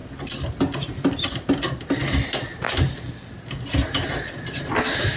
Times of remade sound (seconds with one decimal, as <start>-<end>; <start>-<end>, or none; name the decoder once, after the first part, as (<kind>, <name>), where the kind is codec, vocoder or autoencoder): none